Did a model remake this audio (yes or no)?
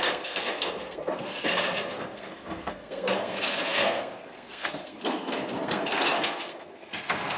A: yes